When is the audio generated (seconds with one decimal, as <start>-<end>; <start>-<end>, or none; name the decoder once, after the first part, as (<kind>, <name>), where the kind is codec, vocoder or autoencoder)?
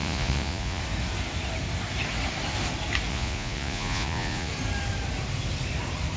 0.0-0.8 (vocoder, Vocos); 3.1-4.5